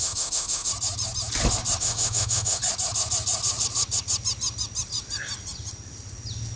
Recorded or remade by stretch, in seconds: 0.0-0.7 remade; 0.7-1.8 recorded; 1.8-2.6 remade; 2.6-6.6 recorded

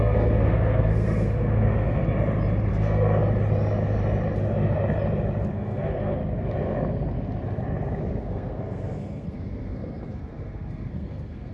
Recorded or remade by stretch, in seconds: 0.0-2.0 remade; 2.0-2.7 recorded; 2.7-3.2 remade; 3.2-5.5 recorded; 5.5-6.2 remade; 6.2-8.2 recorded; 8.2-11.5 remade

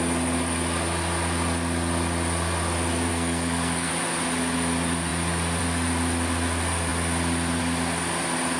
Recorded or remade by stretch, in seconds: 0.0-3.1 recorded; 3.1-3.9 remade; 3.9-8.6 recorded

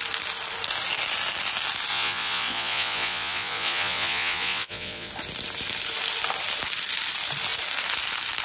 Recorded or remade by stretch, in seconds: 0.0-1.9 recorded; 1.9-5.1 remade; 5.1-8.4 recorded